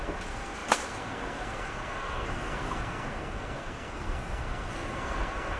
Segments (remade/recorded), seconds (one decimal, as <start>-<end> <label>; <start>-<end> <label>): 0.0-5.6 remade

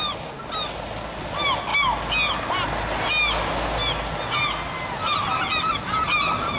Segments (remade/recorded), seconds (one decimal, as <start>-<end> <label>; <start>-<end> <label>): 0.0-6.6 recorded

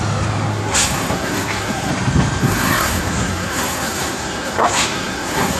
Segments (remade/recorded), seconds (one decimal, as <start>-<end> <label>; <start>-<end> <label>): 0.0-0.5 recorded; 0.5-1.9 remade; 1.9-2.4 recorded; 2.4-5.6 remade

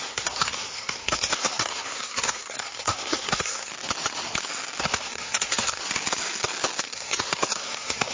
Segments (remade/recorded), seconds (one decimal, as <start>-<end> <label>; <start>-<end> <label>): 0.0-3.7 remade; 3.7-4.8 recorded; 4.8-5.8 remade; 5.8-6.8 recorded; 6.8-8.1 remade

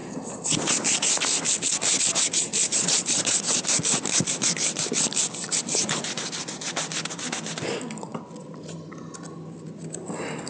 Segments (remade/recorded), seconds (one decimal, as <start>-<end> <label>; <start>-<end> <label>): 0.0-2.5 recorded; 2.5-3.4 remade; 3.4-10.5 recorded

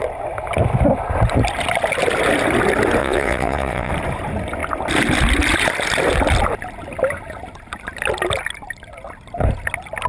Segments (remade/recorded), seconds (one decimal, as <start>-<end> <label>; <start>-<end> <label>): 0.0-3.0 recorded; 3.0-3.9 remade; 3.9-10.1 recorded

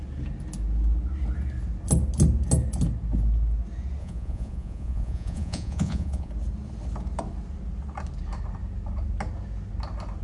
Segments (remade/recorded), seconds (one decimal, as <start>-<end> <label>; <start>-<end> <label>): 0.0-4.0 recorded; 4.0-6.3 remade; 6.3-10.2 recorded

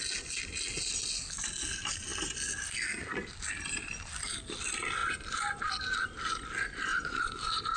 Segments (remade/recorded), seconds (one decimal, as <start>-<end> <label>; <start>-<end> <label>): 0.0-5.0 recorded; 5.0-5.7 remade; 5.7-6.9 recorded; 6.9-7.8 remade